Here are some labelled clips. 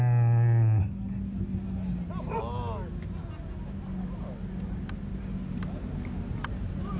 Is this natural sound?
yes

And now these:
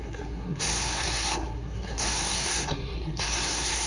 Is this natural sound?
no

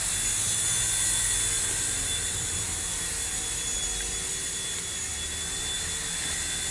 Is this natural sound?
yes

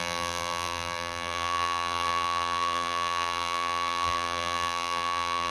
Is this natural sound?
no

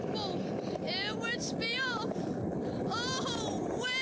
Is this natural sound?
yes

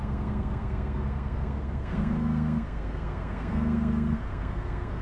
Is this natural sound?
no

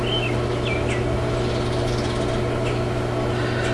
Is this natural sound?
yes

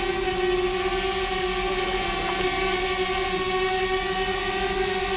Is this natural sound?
yes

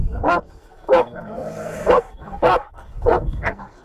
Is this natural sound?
no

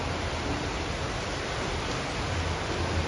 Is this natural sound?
yes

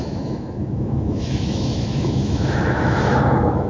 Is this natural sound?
no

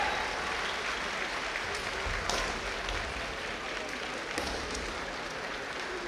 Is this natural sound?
yes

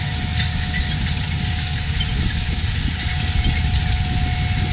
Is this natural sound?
yes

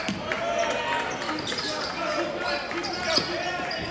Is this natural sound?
yes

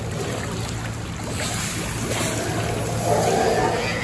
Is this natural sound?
yes